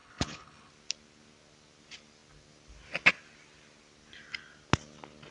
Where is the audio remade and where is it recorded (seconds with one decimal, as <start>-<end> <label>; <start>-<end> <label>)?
0.0-0.7 remade; 0.7-5.3 recorded